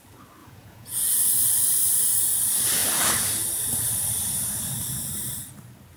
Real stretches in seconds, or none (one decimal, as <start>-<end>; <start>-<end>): 0.0-0.4; 1.3-6.0